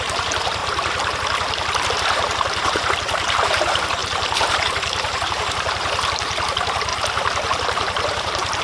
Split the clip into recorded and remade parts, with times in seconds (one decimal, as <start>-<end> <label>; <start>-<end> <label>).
0.0-0.6 remade; 0.6-1.9 recorded; 1.9-8.6 remade